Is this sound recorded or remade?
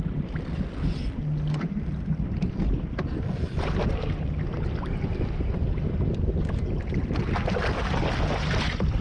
recorded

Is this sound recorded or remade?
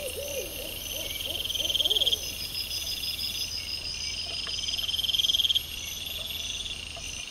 recorded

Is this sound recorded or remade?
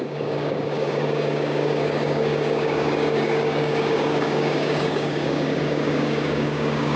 remade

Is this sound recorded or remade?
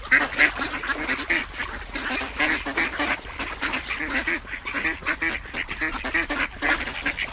recorded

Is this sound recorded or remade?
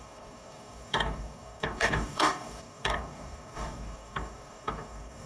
remade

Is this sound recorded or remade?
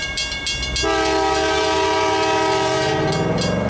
recorded